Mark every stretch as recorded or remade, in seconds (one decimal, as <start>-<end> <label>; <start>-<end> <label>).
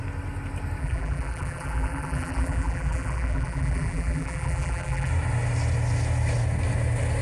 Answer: 0.0-0.8 recorded; 0.8-5.1 remade; 5.1-7.2 recorded